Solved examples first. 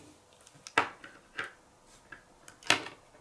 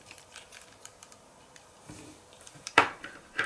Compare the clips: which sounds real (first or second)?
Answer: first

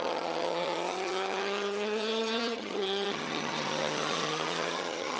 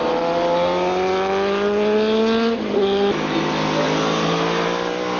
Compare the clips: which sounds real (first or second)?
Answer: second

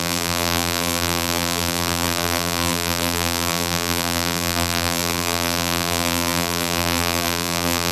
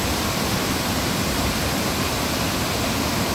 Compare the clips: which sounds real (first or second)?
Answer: second